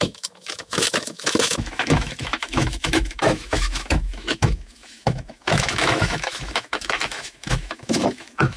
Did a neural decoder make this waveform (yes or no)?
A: yes